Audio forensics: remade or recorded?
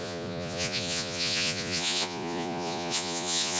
remade